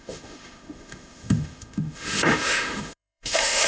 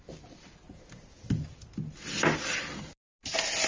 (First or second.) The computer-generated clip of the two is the first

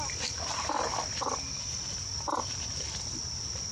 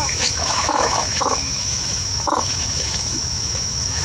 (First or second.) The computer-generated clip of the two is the second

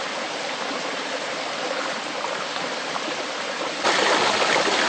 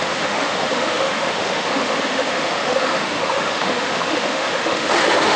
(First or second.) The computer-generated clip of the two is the second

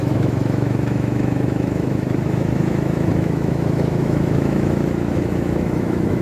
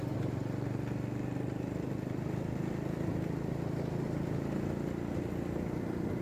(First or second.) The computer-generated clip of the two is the first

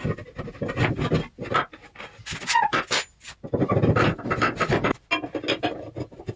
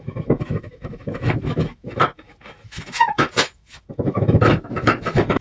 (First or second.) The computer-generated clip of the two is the second